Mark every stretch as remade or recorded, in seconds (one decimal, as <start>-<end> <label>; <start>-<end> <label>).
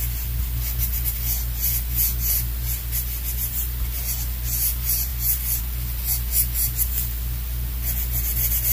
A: 0.0-8.7 recorded